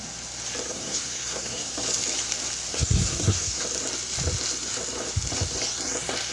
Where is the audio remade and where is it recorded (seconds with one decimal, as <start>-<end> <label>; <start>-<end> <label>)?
0.0-0.7 recorded; 0.7-1.7 remade; 1.7-2.7 recorded; 2.7-3.6 remade; 3.6-6.3 recorded